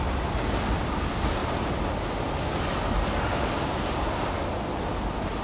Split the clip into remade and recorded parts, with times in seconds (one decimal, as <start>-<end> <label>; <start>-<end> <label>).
0.0-5.4 recorded